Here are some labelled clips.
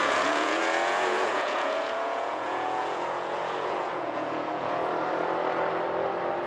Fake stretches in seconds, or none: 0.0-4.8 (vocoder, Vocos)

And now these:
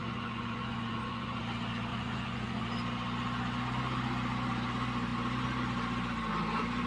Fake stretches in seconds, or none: 0.0-1.4 (vocoder, Vocos); 1.9-2.6

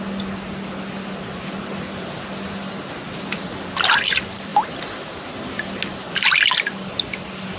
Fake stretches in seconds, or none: none